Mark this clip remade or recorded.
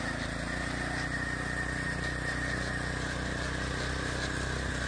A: recorded